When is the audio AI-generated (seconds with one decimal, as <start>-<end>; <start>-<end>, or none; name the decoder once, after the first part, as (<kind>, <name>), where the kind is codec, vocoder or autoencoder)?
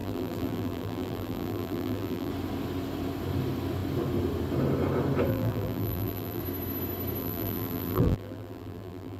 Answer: 0.0-2.3 (vocoder, BigVGAN v2); 5.3-6.4; 7.2-9.2